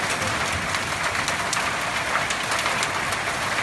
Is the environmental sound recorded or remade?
recorded